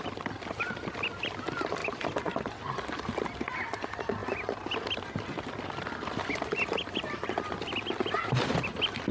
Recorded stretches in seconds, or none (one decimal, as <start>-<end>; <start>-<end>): 0.0-9.1